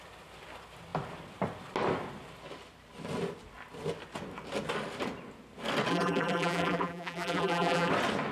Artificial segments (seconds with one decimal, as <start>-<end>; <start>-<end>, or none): 5.9-7.9